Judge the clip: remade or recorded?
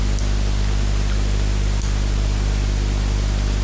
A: recorded